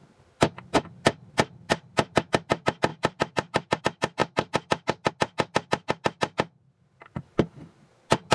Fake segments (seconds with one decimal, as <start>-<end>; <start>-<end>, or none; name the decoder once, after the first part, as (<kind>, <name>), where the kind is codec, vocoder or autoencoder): 2.9-3.8 (vocoder, BigVGAN v2)